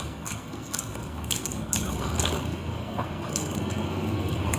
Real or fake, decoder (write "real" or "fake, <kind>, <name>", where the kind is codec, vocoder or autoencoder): fake, codec, SNAC